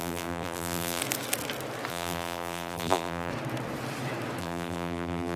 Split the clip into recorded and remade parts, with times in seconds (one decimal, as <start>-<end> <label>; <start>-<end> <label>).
0.0-1.0 remade; 1.0-1.9 recorded; 1.9-3.3 remade; 3.3-4.4 recorded; 4.4-5.4 remade